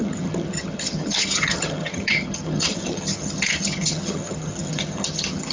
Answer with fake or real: fake